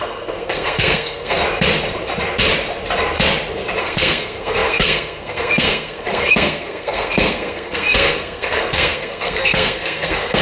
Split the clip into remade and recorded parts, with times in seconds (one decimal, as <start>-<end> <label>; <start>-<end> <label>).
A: 0.0-1.4 remade; 1.4-3.8 recorded; 3.8-10.4 remade